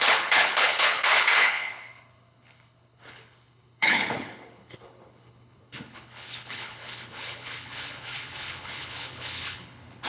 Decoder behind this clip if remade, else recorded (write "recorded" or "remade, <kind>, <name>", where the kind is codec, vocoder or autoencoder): remade, codec, HILCodec